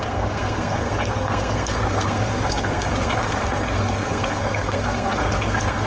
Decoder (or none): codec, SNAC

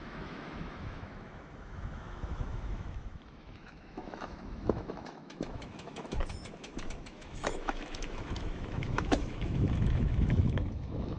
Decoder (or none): autoencoder, DAC-VAE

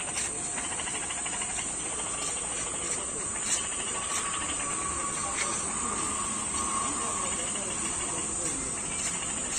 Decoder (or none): none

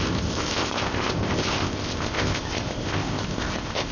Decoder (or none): codec, ZipCodec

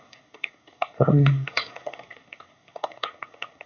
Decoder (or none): codec, SNAC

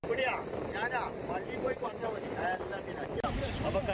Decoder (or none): none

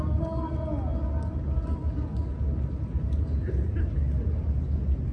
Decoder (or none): none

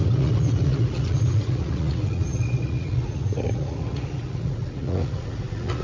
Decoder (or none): vocoder, Vocos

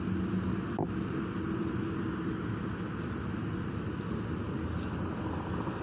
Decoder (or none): none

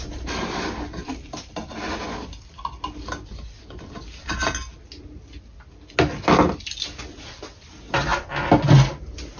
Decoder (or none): none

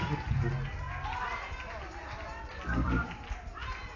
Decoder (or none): none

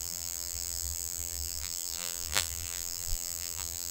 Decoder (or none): vocoder, BigVGAN v2